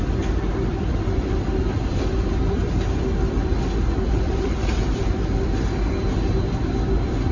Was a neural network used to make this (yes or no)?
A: yes